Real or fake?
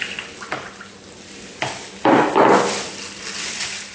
real